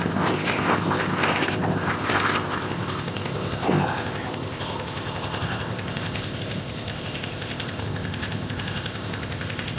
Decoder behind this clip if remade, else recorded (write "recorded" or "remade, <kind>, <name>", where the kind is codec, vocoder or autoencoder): remade, codec, ZipCodec